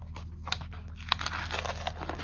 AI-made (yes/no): no